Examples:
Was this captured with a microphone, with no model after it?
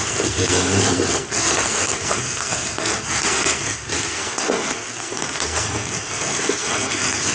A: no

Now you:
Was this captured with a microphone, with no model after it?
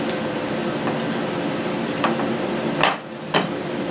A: yes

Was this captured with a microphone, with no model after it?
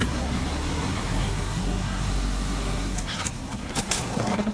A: no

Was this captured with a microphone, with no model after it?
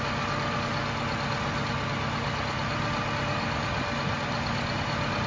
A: yes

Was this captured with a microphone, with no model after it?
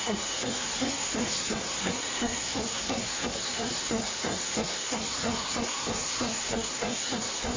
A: no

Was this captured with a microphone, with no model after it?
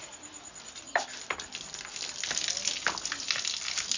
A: yes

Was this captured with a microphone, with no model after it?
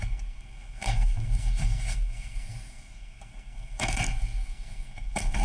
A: no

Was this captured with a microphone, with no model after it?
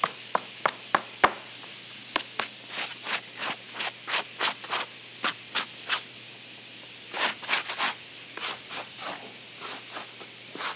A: yes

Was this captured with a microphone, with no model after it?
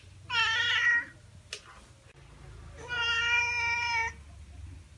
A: yes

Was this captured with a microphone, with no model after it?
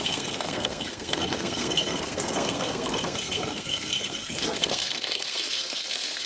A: no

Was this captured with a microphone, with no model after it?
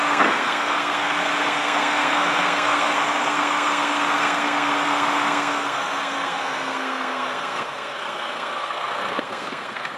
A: no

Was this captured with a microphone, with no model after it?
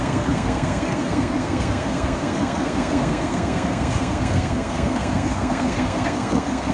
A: no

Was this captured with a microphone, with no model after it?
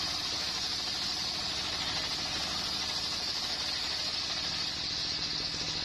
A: yes